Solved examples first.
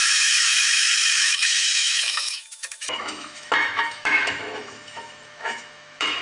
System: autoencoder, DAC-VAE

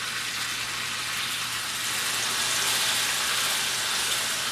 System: none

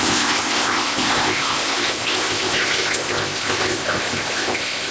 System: codec, ZipCodec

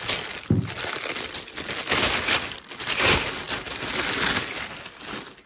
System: none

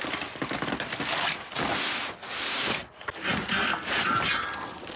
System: vocoder, BigVGAN v2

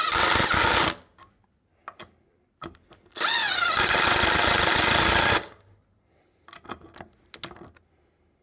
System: none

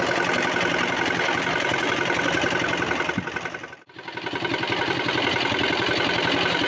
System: none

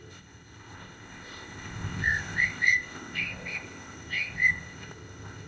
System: codec, ZipCodec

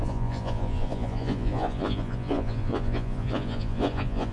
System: vocoder, Vocos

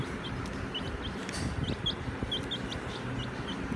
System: none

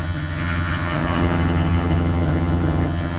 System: vocoder, HiFi-GAN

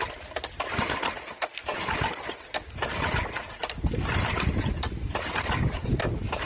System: none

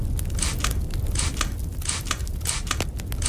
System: none